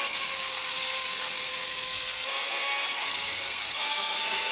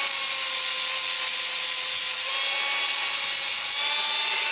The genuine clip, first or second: second